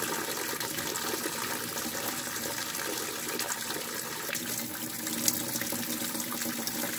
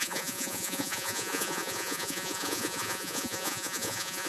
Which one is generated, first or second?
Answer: second